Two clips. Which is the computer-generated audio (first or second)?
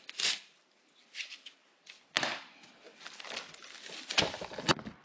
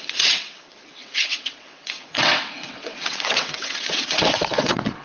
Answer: second